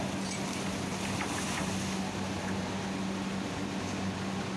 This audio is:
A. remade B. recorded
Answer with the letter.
B